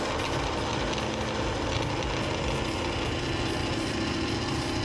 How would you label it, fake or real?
real